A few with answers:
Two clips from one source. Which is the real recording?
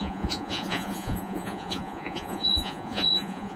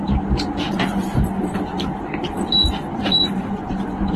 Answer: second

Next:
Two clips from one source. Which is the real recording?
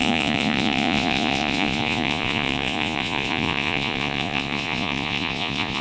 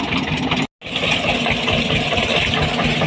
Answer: second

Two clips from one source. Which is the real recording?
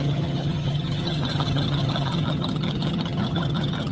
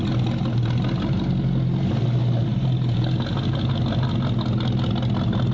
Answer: second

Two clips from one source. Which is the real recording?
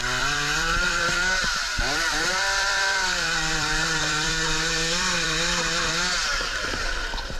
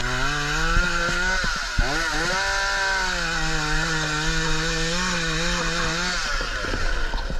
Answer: second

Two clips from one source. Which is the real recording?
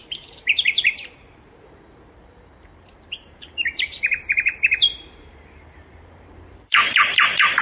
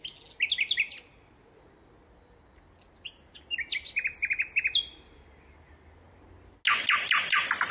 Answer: second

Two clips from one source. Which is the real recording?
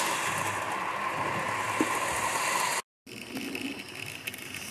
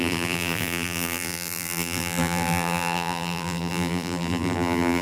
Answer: first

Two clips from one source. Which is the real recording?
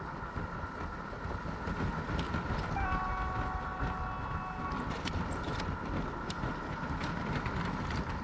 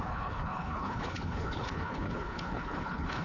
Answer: first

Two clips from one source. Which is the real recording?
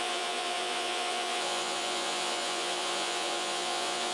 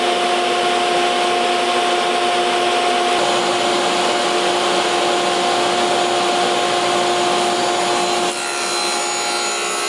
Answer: second